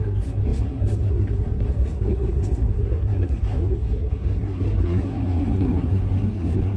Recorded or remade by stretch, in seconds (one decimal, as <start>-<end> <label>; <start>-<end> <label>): 0.0-6.8 remade